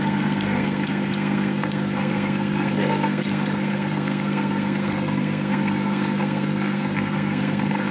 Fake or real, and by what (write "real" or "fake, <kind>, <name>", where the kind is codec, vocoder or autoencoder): fake, codec, SNAC